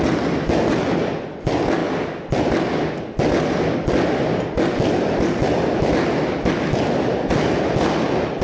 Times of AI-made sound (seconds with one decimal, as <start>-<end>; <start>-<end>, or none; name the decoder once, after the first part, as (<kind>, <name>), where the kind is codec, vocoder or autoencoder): none